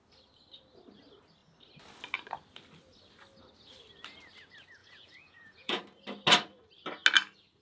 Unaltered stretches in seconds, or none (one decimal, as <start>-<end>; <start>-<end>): 0.0-4.8; 5.8-7.6